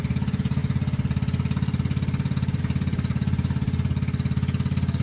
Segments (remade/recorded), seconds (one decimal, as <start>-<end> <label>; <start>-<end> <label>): 0.0-5.0 recorded